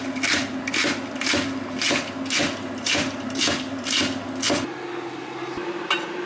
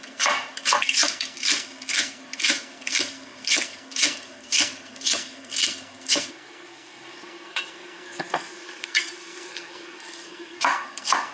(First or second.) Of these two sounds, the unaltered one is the first